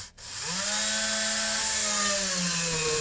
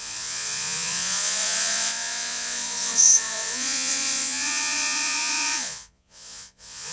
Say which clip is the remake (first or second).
second